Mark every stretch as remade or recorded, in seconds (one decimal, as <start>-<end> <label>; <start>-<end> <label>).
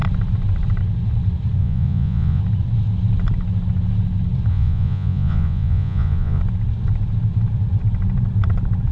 0.0-1.6 recorded; 1.6-2.4 remade; 2.4-4.5 recorded; 4.5-6.4 remade; 6.4-8.9 recorded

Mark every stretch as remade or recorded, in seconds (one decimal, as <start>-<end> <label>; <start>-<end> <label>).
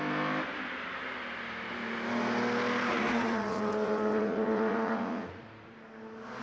0.0-2.9 recorded; 2.9-5.4 remade; 5.4-6.4 recorded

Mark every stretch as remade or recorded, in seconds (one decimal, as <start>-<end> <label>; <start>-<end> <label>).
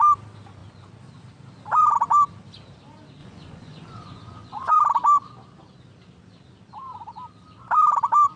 0.0-3.2 recorded; 3.2-4.7 remade; 4.7-8.4 recorded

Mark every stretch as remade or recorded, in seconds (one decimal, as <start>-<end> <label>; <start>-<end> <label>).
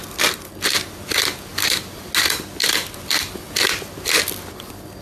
0.0-5.0 recorded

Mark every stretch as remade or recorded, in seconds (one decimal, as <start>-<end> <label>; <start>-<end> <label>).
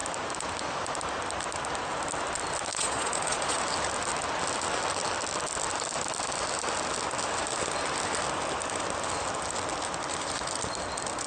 0.0-2.7 recorded; 2.7-3.6 remade; 3.6-11.3 recorded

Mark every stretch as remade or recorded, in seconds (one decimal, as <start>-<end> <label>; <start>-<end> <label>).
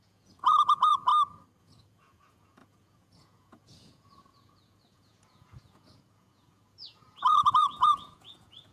0.0-1.1 remade; 1.1-1.6 recorded; 1.6-8.7 remade